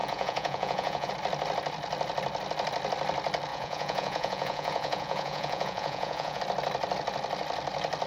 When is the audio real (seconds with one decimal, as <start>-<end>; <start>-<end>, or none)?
1.1-3.5; 6.4-8.1